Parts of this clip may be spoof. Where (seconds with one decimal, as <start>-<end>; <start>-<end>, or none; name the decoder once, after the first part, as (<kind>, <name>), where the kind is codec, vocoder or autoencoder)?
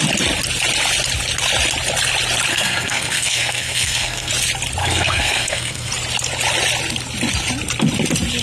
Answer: 2.5-4.3 (codec, SNAC); 4.8-5.9